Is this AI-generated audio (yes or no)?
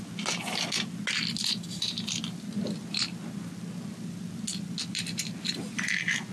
no